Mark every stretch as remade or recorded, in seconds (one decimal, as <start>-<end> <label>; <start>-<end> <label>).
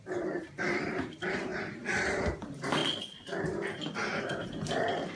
0.0-1.5 remade; 1.5-2.3 recorded; 2.3-2.8 remade; 2.8-4.2 recorded; 4.2-5.2 remade